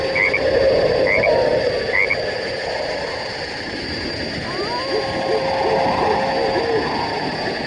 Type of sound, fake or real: real